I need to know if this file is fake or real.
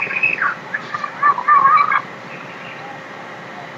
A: real